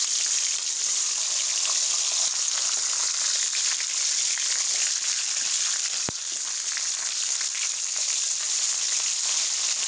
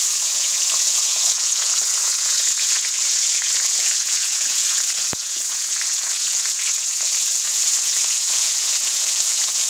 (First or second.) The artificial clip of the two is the second